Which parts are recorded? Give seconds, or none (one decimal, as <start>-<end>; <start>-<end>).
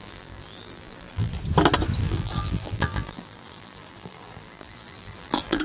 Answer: 1.3-2.0